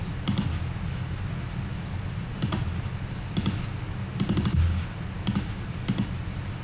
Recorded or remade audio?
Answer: recorded